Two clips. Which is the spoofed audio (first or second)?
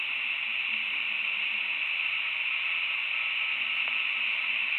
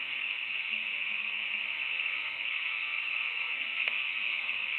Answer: second